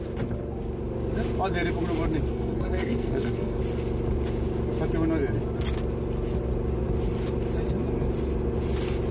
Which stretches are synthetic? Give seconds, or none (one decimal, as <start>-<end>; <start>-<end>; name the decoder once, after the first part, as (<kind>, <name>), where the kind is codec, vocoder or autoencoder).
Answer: 2.3-3.6 (codec, SNAC)